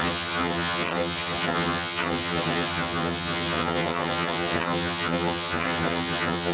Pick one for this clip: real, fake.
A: fake